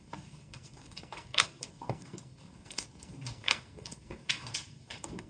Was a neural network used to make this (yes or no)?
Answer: yes